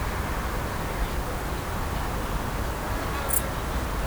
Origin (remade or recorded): recorded